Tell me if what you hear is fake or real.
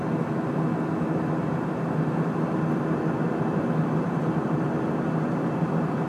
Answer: real